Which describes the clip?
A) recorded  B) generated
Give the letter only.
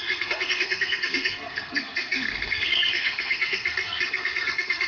B